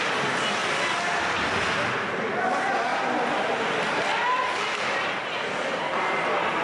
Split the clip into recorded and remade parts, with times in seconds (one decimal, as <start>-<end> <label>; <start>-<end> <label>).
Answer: 0.0-6.6 recorded

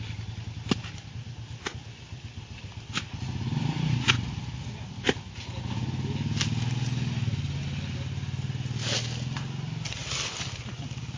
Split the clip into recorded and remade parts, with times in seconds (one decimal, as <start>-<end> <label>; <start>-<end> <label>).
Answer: 0.0-1.8 recorded; 1.8-4.1 remade; 4.1-11.2 recorded

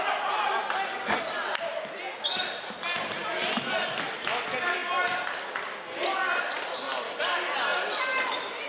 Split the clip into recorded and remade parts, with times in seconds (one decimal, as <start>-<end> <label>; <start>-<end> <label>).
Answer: 0.0-8.7 recorded

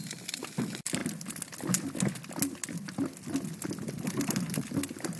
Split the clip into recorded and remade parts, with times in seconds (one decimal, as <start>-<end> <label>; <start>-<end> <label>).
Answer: 0.0-1.0 remade; 1.0-4.1 recorded; 4.1-5.2 remade